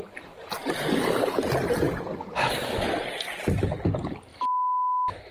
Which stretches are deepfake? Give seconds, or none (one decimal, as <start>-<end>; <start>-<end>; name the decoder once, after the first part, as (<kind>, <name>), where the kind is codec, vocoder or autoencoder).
none